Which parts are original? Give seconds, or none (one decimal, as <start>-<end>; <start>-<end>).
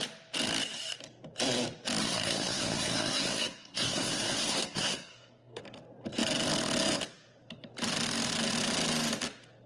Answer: 0.0-2.0; 5.6-9.7